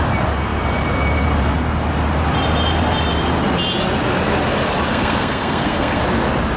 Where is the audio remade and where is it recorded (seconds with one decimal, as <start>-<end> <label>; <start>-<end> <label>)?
0.0-4.9 recorded; 4.9-6.0 remade; 6.0-6.6 recorded